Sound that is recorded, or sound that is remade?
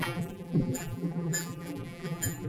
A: remade